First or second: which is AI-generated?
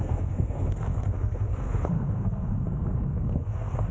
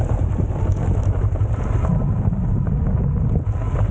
first